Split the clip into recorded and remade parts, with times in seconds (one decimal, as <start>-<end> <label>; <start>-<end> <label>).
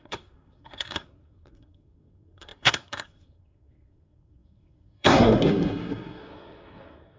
0.0-7.2 remade